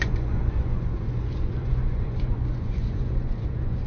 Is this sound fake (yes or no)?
yes